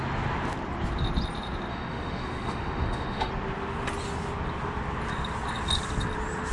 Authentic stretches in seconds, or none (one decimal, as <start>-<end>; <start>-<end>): 0.0-1.7; 3.3-6.5